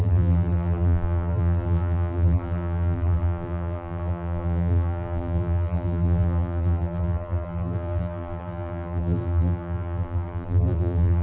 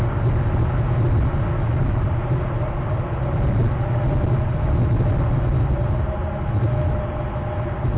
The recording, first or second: second